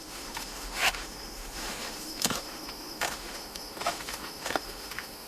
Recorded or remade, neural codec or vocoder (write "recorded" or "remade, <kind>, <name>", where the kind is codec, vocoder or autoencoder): remade, autoencoder, DAC-VAE